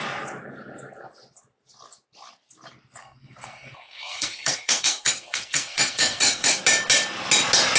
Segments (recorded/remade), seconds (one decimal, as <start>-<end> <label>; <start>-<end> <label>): 0.0-3.0 recorded; 3.0-6.6 remade; 6.6-7.8 recorded